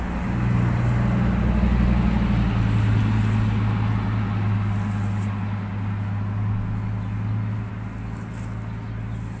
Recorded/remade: recorded